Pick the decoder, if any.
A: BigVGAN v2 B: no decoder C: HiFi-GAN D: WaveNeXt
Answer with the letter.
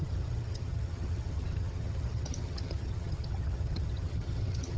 C